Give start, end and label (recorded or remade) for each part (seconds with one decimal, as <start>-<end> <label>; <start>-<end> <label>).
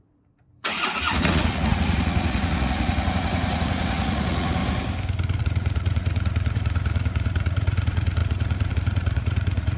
0.0-4.6 remade; 4.6-5.4 recorded; 5.4-9.8 remade